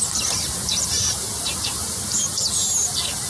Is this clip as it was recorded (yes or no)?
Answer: yes